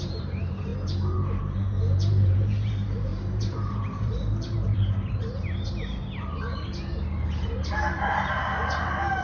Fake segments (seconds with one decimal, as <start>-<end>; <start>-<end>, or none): 0.0-6.0; 7.4-9.2

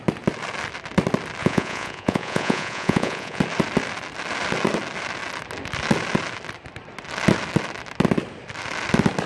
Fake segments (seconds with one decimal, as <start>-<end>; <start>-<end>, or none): 1.4-3.4

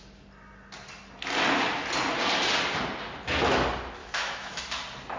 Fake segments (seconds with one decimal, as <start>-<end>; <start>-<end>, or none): 4.0-4.6

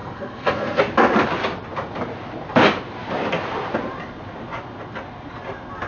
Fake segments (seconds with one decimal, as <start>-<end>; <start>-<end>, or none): 0.0-0.8